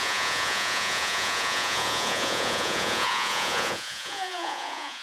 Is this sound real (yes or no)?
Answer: no